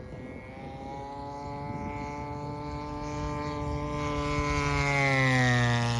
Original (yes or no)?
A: yes